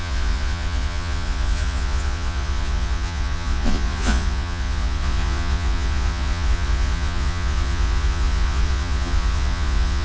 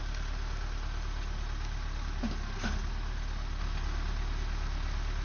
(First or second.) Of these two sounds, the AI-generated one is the first